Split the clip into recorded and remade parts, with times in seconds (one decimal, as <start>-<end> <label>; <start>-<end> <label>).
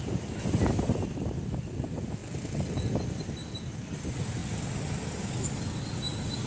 0.0-6.5 recorded